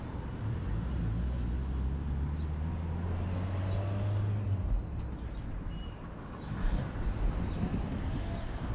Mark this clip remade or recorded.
recorded